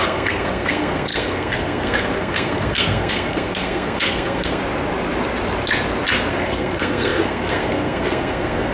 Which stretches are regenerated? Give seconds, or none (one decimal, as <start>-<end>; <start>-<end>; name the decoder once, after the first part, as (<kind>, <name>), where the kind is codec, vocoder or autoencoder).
0.0-4.6 (codec, SNAC); 6.3-8.7